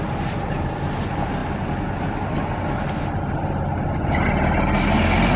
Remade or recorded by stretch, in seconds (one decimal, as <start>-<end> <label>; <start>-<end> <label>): 0.0-5.4 recorded